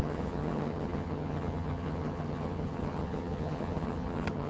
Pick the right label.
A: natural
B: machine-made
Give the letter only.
B